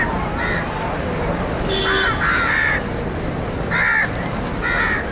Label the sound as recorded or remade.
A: recorded